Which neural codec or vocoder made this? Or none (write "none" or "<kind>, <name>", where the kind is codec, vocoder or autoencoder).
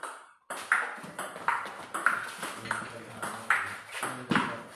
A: none